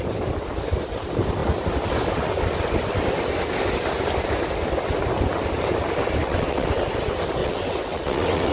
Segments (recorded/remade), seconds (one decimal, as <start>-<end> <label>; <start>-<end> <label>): 0.0-6.2 recorded; 6.2-6.8 remade; 6.8-7.4 recorded; 7.4-8.5 remade

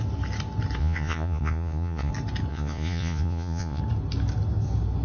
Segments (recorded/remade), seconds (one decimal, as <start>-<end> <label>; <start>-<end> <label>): 0.0-0.8 recorded; 0.8-2.1 remade; 2.1-2.5 recorded; 2.5-3.8 remade; 3.8-5.0 recorded

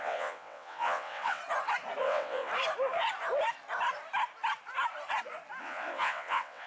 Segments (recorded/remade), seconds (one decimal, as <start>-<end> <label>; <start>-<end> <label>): 0.0-1.4 remade; 1.4-2.0 recorded; 2.0-2.5 remade; 2.5-5.6 recorded; 5.6-6.7 remade

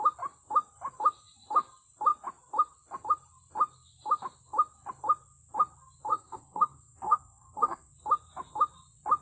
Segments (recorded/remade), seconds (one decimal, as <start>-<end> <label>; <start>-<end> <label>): 0.0-6.1 recorded; 6.1-7.9 remade; 7.9-9.2 recorded

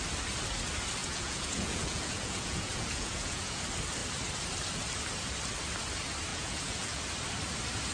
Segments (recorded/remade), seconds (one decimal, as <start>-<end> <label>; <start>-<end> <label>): 0.0-1.0 recorded; 1.0-3.6 remade; 3.6-6.3 recorded; 6.3-7.0 remade; 7.0-7.9 recorded

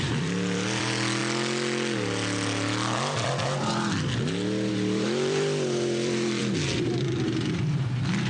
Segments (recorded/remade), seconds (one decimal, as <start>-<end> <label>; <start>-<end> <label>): 0.0-1.2 remade; 1.2-4.7 recorded; 4.7-6.4 remade; 6.4-7.0 recorded; 7.0-8.3 remade